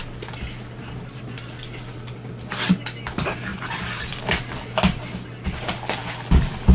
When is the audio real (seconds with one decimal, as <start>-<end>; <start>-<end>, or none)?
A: 0.0-3.5; 4.1-6.7